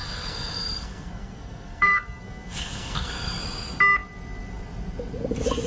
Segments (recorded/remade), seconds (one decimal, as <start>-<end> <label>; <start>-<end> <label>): 0.0-3.4 remade; 3.4-5.7 recorded